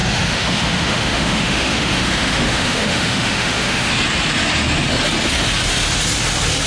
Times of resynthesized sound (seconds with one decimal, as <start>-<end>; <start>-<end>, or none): 0.0-3.9

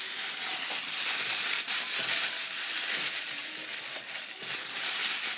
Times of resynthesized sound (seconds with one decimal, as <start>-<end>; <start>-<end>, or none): none

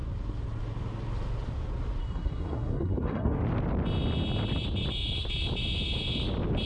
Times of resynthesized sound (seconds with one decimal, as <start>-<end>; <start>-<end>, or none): 2.0-3.4

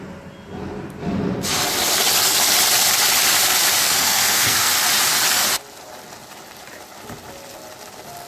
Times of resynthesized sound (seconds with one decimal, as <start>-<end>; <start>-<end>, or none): 3.8-4.7